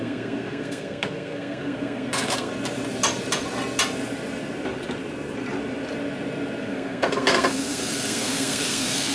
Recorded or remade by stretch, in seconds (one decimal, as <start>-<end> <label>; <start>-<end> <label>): 0.0-2.5 remade; 2.5-6.6 recorded; 6.6-9.1 remade

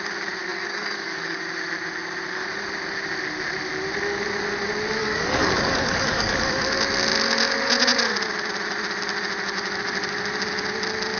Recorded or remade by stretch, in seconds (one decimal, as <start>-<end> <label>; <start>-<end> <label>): 0.0-0.5 recorded; 0.5-1.4 remade; 1.4-5.0 recorded; 5.0-6.5 remade; 6.5-11.2 recorded

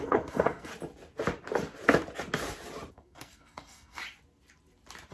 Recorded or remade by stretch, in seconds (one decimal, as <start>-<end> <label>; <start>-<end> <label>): 0.0-0.7 remade; 0.7-2.9 recorded; 2.9-4.0 remade; 4.0-5.1 recorded

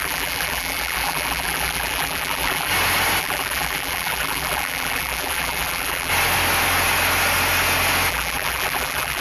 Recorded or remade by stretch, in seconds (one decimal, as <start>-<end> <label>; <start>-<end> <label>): 0.0-2.7 remade; 2.7-3.2 recorded; 3.2-6.1 remade; 6.1-8.1 recorded; 8.1-9.2 remade

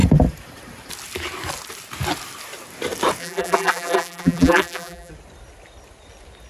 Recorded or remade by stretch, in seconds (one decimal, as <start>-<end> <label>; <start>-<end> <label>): 0.0-3.2 recorded; 3.2-5.1 remade; 5.1-6.5 recorded

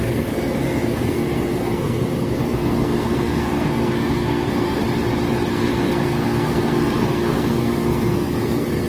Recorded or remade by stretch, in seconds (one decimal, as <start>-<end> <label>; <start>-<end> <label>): 0.0-4.8 remade; 4.8-5.5 recorded; 5.5-8.9 remade